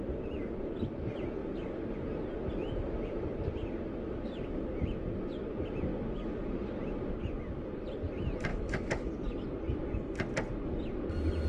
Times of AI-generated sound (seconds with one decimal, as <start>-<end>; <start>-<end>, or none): 8.5-9.1